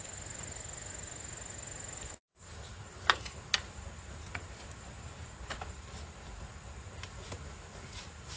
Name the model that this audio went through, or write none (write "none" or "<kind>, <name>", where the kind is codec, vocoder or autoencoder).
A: none